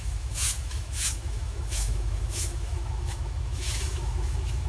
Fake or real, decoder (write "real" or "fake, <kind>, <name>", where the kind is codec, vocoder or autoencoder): fake, autoencoder, DAC-VAE